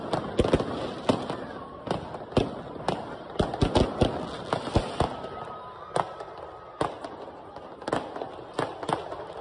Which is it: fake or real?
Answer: real